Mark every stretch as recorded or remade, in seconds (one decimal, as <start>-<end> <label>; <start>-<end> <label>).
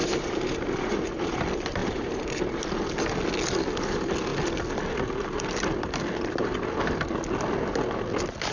0.0-1.4 remade; 1.4-1.8 recorded; 1.8-2.4 remade; 2.4-8.5 recorded